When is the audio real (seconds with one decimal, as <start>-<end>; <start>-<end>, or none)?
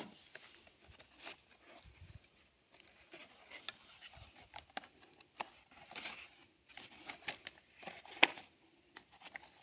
0.0-9.6